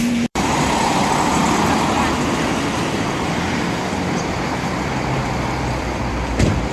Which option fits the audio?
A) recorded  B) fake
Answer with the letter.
B